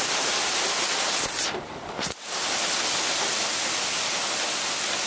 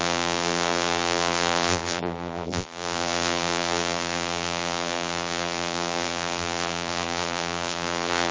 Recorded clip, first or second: first